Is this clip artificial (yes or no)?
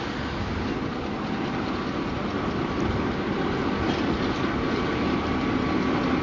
no